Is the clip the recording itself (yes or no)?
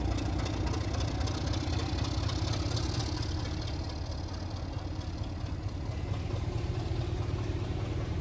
yes